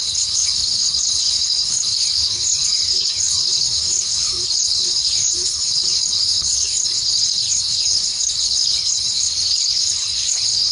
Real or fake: fake